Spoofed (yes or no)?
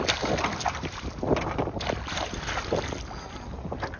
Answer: no